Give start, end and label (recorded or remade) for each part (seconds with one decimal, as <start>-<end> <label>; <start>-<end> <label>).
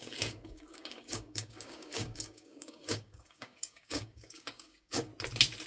0.0-5.1 remade; 5.1-5.7 recorded